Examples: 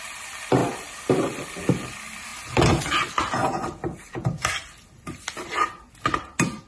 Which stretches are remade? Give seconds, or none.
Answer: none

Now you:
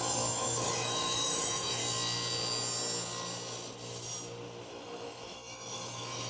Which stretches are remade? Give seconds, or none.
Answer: 0.0-1.8; 4.7-6.3

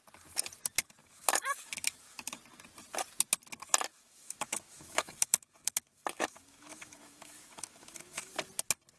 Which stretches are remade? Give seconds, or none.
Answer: 1.0-2.4; 3.9-8.3

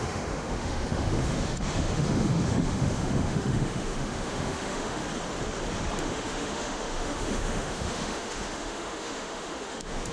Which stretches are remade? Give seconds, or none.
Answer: 0.0-5.0; 6.0-10.1

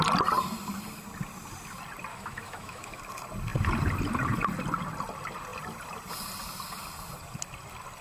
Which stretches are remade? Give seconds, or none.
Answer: 2.1-3.0

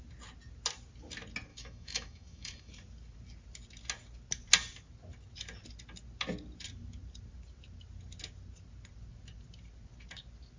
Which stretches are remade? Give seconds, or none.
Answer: 1.5-2.7